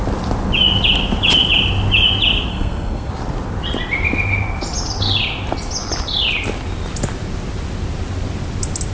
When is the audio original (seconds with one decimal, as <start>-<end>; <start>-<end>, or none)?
0.0-2.5; 3.1-8.9